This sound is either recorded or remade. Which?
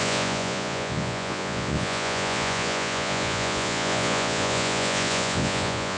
remade